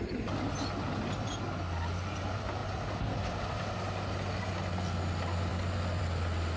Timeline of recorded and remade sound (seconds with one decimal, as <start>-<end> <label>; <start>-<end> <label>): 0.0-6.6 recorded